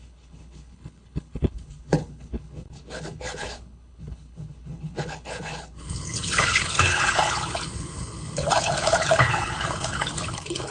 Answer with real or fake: fake